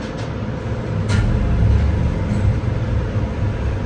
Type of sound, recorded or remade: recorded